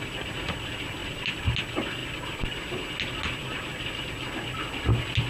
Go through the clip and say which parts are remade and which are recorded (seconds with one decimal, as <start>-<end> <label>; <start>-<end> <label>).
0.0-5.3 recorded

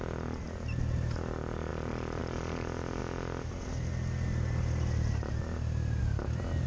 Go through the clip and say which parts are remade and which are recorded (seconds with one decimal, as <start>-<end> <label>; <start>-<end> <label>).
0.0-6.7 recorded

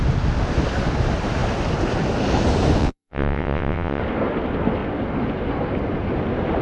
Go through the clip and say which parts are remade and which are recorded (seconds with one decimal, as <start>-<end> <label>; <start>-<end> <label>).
0.0-2.8 recorded; 2.8-4.0 remade; 4.0-6.6 recorded